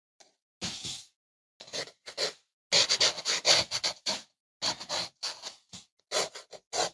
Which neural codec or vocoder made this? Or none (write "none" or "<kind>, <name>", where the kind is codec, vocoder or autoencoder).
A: none